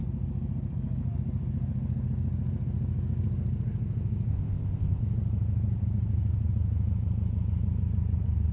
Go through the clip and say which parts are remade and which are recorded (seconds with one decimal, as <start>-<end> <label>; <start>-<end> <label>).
0.0-4.3 recorded; 4.3-5.0 remade; 5.0-8.5 recorded